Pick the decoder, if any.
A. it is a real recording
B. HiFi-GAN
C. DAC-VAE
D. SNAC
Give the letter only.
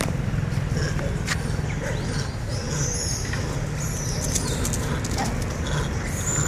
A